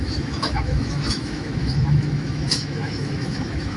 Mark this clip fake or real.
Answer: fake